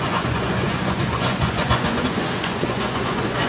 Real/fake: fake